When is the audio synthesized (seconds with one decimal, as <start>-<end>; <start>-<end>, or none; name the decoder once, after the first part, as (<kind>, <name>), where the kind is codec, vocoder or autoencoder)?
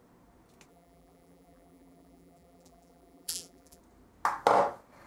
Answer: 0.7-3.8 (vocoder, BigVGAN v2)